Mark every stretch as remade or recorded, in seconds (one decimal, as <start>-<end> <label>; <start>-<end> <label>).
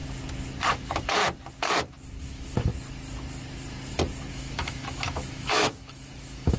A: 0.0-0.7 recorded; 0.7-1.2 remade; 1.2-2.2 recorded; 2.2-2.7 remade; 2.7-4.3 recorded; 4.3-6.6 remade